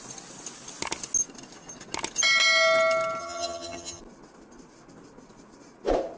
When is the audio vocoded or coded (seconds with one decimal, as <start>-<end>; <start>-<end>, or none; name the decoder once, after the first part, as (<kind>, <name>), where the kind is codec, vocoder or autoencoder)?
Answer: 3.2-4.0 (vocoder, HiFi-GAN)